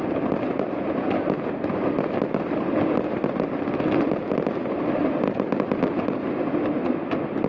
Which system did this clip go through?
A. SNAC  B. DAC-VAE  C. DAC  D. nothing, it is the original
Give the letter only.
D